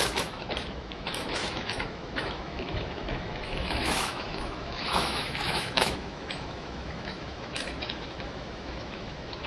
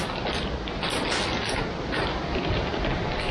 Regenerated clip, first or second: first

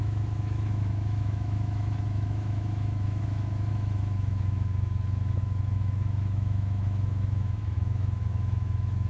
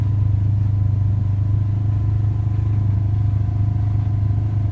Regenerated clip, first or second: first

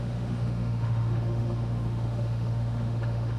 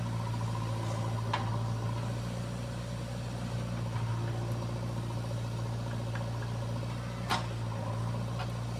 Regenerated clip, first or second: first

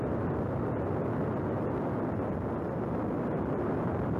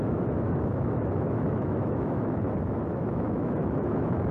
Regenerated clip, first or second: second